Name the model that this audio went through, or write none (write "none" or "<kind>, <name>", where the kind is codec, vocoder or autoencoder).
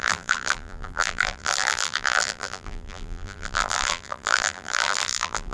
vocoder, BigVGAN v2